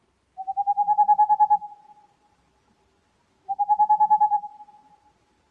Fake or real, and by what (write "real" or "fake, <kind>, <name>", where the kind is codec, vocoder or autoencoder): real